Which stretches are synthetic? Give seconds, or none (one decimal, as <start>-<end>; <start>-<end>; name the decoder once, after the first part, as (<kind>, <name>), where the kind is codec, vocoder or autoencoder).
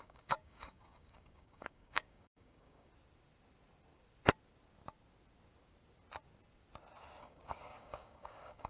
0.0-2.9 (codec, DAC); 7.2-8.7